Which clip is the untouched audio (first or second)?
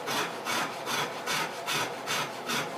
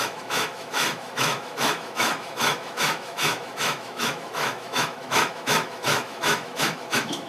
first